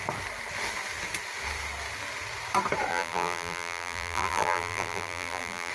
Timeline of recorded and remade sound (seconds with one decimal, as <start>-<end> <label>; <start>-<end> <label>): 0.0-2.9 recorded; 2.9-5.7 remade

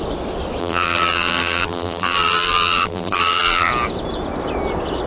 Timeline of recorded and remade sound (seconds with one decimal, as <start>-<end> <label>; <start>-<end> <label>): 0.0-0.6 recorded; 0.6-3.7 remade; 3.7-5.1 recorded

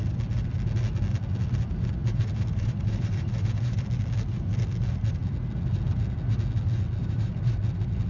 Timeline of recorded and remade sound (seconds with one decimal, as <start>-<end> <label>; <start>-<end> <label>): 0.0-2.0 recorded; 2.0-3.9 remade; 3.9-7.0 recorded; 7.0-7.6 remade; 7.6-8.1 recorded

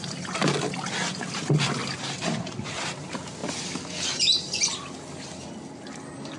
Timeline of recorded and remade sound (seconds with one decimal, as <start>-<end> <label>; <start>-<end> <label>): 0.0-1.8 recorded; 1.8-2.5 remade; 2.5-6.4 recorded